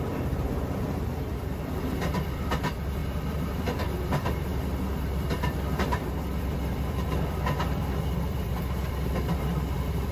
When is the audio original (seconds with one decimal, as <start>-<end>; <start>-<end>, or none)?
none

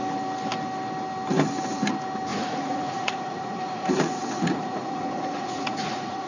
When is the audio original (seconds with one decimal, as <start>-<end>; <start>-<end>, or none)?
0.0-2.3

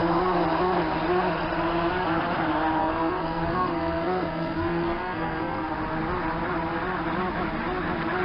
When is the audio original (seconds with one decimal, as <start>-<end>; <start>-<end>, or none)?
0.0-2.8; 5.7-8.2

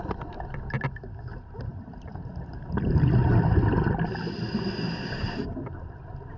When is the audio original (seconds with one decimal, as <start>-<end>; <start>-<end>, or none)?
0.0-6.4

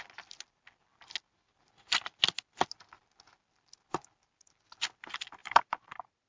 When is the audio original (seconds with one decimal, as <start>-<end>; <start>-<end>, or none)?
0.0-5.4

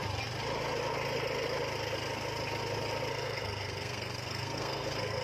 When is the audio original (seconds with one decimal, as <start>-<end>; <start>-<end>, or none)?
0.0-3.1

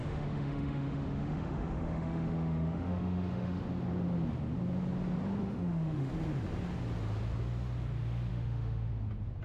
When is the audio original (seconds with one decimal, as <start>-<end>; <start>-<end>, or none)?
3.6-5.4; 6.1-8.3; 8.9-9.4